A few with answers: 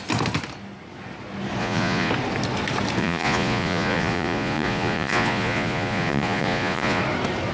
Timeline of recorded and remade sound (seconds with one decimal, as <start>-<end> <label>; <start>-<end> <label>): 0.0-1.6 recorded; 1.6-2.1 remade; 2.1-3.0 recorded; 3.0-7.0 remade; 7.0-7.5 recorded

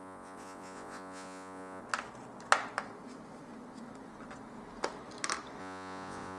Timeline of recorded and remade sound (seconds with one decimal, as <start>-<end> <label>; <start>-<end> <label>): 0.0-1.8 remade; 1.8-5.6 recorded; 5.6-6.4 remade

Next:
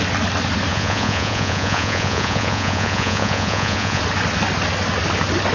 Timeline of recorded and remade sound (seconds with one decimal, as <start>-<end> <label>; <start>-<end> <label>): 0.0-0.7 recorded; 0.7-4.0 remade; 4.0-5.5 recorded